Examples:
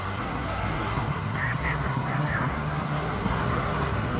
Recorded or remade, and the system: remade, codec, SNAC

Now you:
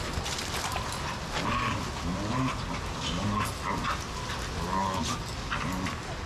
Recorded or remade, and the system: recorded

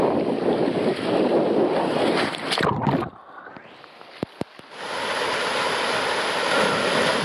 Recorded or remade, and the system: recorded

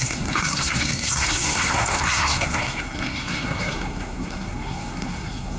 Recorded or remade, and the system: remade, codec, SNAC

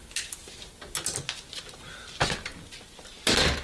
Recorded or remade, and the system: recorded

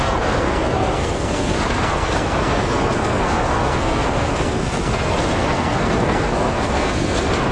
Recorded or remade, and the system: remade, codec, SNAC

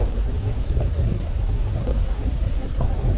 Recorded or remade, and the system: remade, codec, SNAC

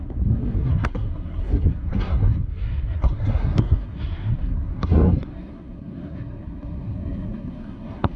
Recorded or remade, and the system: remade, codec, SNAC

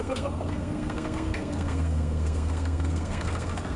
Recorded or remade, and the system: remade, codec, SNAC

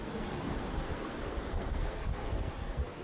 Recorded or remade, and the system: remade, codec, SNAC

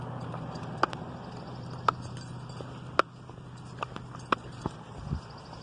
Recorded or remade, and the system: recorded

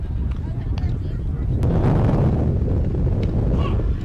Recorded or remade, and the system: recorded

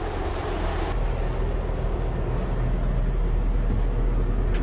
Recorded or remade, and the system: recorded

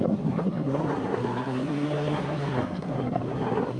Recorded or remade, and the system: remade, codec, SNAC